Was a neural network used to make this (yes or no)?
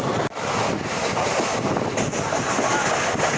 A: no